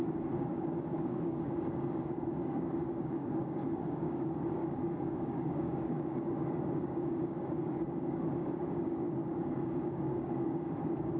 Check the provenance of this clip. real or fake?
fake